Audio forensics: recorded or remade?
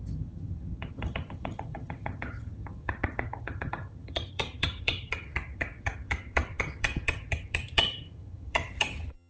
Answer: remade